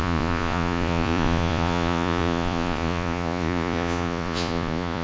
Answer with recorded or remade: remade